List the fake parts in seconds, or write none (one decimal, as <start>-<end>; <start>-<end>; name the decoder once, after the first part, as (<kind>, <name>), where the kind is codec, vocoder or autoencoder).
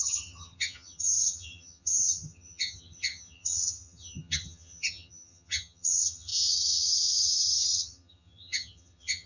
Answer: 0.0-9.3 (vocoder, HiFi-GAN)